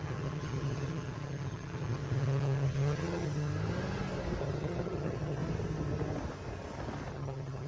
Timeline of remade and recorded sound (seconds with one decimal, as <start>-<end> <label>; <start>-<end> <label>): 0.0-3.5 remade; 3.5-4.4 recorded; 4.4-5.4 remade; 5.4-7.1 recorded; 7.1-7.7 remade